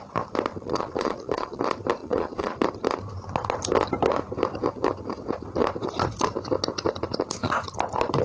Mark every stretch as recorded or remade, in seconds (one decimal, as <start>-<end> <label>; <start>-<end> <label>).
0.0-0.5 recorded; 0.5-1.6 remade; 1.6-2.0 recorded; 2.0-2.6 remade; 2.6-8.2 recorded